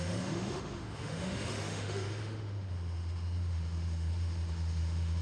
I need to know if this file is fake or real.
fake